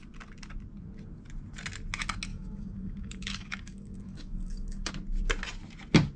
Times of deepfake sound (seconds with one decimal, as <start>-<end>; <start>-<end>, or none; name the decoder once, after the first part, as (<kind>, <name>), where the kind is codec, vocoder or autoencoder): 2.3-4.9 (codec, DAC)